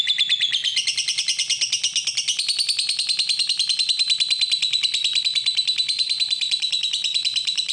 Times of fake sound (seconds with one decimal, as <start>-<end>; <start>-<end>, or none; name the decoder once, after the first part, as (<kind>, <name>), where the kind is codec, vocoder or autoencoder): 0.0-0.7 (vocoder, BigVGAN v2); 5.2-7.7